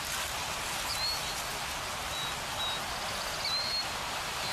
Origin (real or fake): real